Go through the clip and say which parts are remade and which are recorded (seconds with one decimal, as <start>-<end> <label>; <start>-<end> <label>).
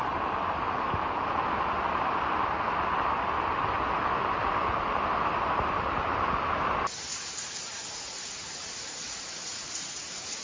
0.0-7.1 recorded; 7.1-10.4 remade